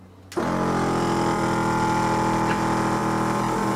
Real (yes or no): yes